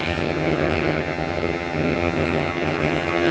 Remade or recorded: remade